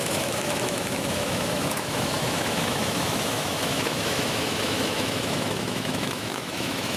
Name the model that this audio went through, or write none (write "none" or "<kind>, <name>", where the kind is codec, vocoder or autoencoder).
autoencoder, DAC-VAE